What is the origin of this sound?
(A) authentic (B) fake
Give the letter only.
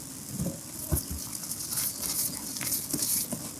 A